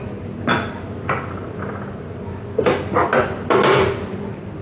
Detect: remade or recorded recorded